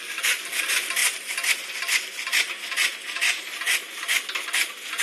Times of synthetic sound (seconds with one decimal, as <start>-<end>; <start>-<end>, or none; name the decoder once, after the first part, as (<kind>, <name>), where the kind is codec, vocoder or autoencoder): none